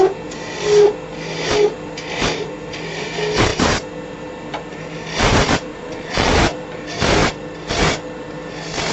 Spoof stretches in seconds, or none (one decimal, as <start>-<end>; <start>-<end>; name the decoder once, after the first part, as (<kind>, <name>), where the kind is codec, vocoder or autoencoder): 5.7-6.3 (vocoder, Vocos)